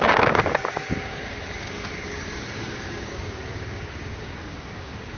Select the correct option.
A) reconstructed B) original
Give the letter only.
A